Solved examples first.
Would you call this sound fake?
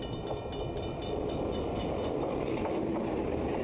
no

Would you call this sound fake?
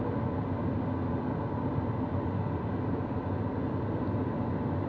no